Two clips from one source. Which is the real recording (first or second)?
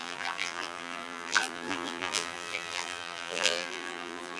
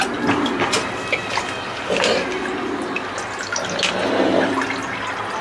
second